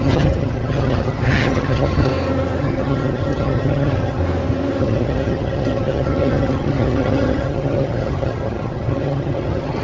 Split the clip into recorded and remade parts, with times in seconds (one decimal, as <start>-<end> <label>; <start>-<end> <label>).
0.0-2.1 remade; 2.1-2.6 recorded; 2.6-4.2 remade; 4.2-4.8 recorded; 4.8-9.8 remade